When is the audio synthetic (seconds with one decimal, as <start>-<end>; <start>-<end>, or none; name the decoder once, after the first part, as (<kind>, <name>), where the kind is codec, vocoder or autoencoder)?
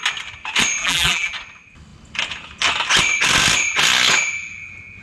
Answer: 0.8-1.3 (vocoder, BigVGAN v2)